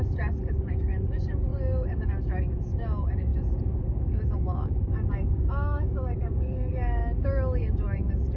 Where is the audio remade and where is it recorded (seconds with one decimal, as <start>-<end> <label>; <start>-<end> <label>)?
0.0-7.0 remade; 7.0-7.6 recorded; 7.6-8.4 remade